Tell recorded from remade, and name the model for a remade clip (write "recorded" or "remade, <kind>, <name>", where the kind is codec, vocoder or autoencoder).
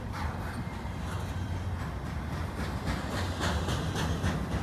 recorded